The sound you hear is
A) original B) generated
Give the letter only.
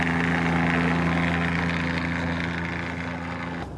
A